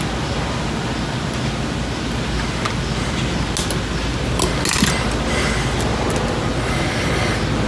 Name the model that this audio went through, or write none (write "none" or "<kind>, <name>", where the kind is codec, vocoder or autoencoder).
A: none